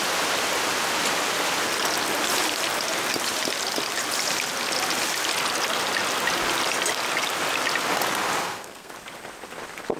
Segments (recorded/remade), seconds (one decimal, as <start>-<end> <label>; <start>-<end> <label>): 0.0-8.4 recorded; 8.4-8.9 remade; 8.9-10.0 recorded